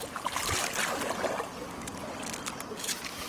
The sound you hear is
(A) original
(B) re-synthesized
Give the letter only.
A